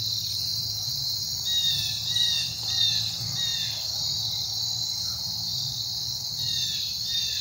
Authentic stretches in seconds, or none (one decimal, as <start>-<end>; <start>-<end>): 0.0-5.5; 6.2-7.4